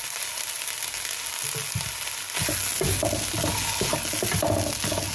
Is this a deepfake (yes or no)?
no